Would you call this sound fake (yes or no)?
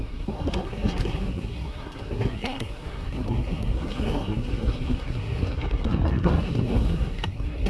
yes